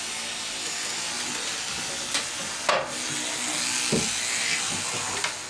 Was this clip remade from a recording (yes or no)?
no